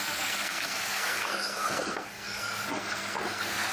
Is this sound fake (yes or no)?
yes